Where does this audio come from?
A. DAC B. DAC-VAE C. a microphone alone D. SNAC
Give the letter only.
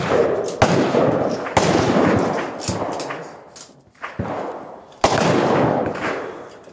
C